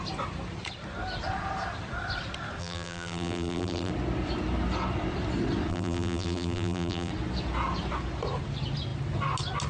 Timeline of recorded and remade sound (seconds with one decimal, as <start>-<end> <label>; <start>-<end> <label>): 0.0-2.6 recorded; 2.6-3.9 remade; 3.9-5.7 recorded; 5.7-7.1 remade; 7.1-9.7 recorded

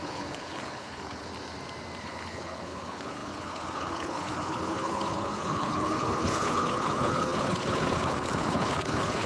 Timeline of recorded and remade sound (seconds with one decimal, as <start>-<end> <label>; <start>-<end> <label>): 0.0-1.3 remade; 1.3-2.0 recorded; 2.0-9.3 remade

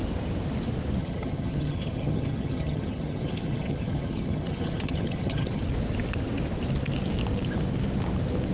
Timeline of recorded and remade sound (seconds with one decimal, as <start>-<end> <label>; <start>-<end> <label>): 0.0-1.0 recorded; 1.0-5.6 remade; 5.6-8.5 recorded

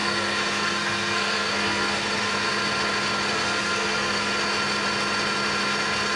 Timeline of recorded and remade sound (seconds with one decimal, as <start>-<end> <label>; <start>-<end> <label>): 0.0-2.5 remade; 2.5-3.3 recorded; 3.3-4.3 remade; 4.3-6.2 recorded

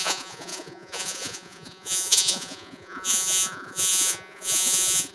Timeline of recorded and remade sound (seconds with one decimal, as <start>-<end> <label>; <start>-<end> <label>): 0.0-5.1 remade

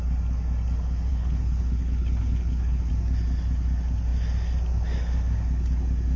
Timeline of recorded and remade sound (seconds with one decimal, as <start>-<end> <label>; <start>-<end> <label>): 0.0-1.1 recorded; 1.1-2.9 remade; 2.9-6.2 recorded

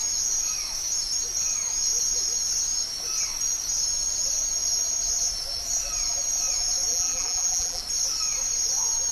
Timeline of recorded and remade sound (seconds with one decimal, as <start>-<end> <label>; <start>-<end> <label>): 0.0-6.9 recorded; 6.9-7.8 remade; 7.8-9.1 recorded

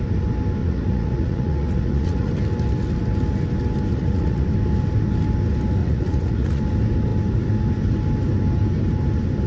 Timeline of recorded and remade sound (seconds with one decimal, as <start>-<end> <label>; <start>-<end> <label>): 0.0-0.6 recorded; 0.6-2.3 remade; 2.3-3.9 recorded; 3.9-4.5 remade; 4.5-5.8 recorded; 5.8-6.6 remade; 6.6-9.5 recorded